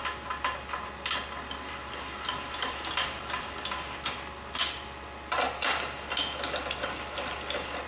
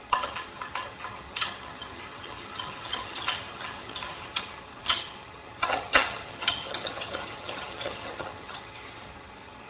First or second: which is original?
first